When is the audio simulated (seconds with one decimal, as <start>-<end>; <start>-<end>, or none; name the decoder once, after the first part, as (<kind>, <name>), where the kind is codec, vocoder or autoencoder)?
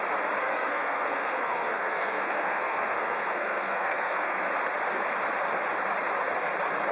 0.4-4.5 (codec, SNAC)